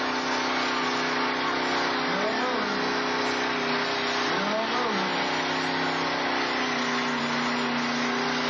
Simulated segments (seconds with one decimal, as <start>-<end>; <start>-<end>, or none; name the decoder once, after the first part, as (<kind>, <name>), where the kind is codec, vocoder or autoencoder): none